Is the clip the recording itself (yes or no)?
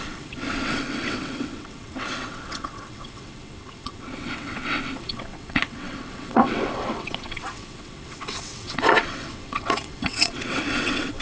no